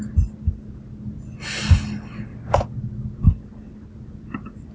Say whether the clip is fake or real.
real